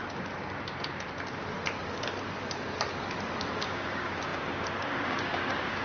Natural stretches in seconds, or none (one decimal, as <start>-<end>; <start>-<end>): 0.0-3.5